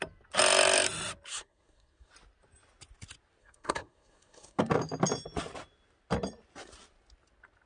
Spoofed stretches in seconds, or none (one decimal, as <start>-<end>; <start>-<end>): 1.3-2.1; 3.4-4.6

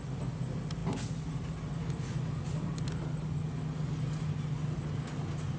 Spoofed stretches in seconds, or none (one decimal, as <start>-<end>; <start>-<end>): none

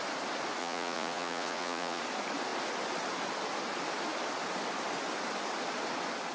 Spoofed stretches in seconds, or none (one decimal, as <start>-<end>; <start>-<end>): 0.6-2.0

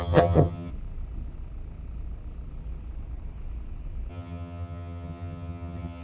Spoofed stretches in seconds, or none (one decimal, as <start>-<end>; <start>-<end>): 0.0-0.7; 4.1-6.0

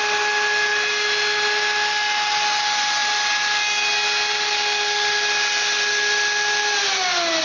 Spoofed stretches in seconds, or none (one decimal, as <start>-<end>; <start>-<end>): none

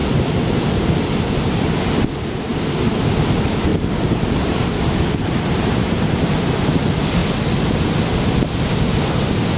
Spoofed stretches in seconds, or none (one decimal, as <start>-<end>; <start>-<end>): 3.7-6.0

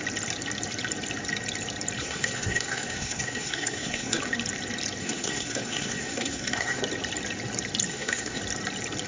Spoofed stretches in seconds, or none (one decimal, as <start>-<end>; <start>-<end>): 2.0-4.2; 5.0-6.8; 7.9-8.4

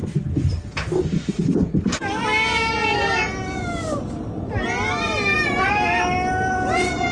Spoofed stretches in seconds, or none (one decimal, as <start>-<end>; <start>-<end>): none